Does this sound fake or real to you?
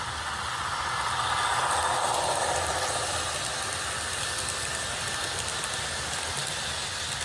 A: real